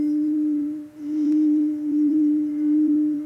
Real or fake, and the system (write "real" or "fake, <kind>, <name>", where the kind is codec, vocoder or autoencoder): fake, vocoder, BigVGAN v2